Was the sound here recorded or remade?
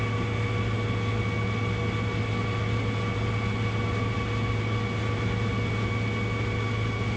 recorded